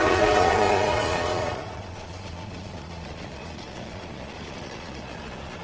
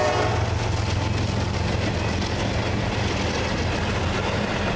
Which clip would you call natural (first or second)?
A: second